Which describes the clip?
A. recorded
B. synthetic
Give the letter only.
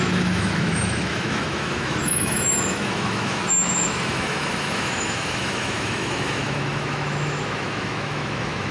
B